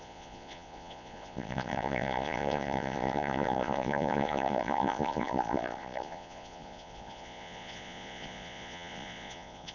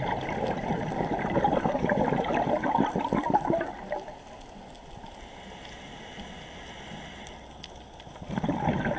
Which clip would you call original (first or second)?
second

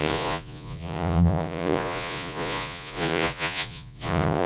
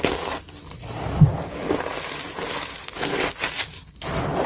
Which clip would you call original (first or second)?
second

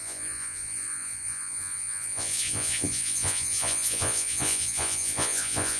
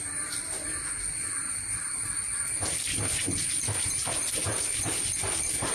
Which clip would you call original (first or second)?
second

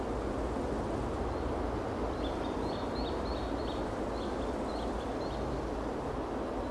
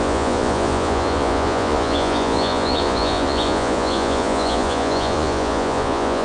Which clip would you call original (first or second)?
first